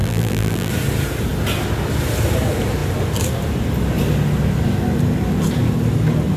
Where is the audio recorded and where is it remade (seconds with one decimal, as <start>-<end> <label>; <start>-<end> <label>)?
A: 0.0-0.7 remade; 0.7-6.4 recorded